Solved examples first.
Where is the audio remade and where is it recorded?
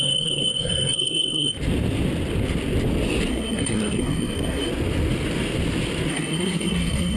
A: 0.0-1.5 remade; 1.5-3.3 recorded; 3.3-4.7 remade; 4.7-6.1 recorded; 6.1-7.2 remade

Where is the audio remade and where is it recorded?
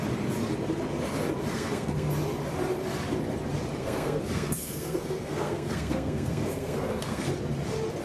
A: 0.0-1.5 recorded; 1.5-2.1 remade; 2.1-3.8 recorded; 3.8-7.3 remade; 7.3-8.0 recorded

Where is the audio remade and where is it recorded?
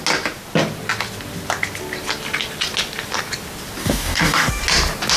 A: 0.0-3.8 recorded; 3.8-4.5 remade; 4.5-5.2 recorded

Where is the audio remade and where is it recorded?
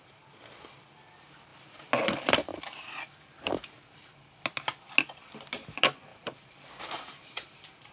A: 0.0-2.5 recorded; 2.5-4.3 remade; 4.3-6.1 recorded; 6.1-7.9 remade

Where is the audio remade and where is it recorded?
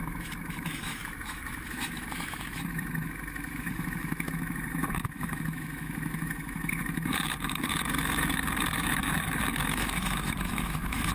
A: 0.0-11.1 remade